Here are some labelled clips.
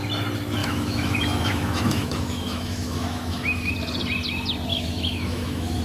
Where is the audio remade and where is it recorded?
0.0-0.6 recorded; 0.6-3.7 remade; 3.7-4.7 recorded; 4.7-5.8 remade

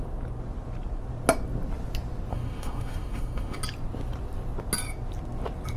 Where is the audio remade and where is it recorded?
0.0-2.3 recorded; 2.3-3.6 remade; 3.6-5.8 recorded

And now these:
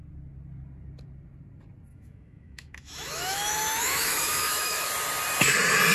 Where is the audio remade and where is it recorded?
0.0-1.9 recorded; 1.9-4.9 remade; 4.9-5.9 recorded